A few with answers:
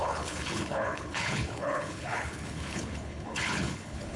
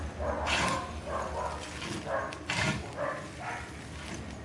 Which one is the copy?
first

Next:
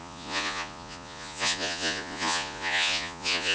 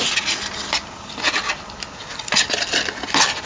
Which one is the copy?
first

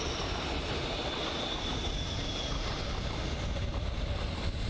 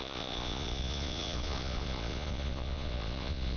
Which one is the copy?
second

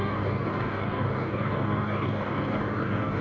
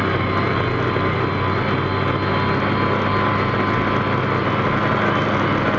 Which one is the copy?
first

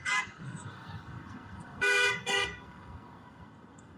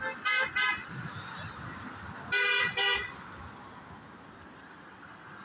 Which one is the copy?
first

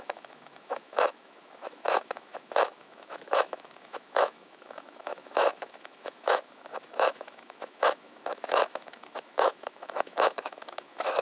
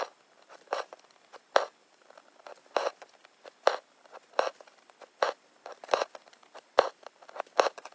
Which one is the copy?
first